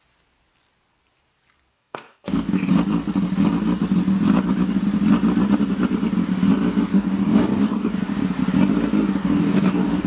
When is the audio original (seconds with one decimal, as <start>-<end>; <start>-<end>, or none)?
0.0-1.7; 2.7-6.9; 8.2-9.2